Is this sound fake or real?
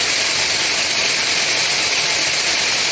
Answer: real